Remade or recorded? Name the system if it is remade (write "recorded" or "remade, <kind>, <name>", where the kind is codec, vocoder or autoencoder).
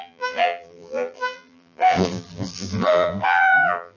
remade, vocoder, BigVGAN v2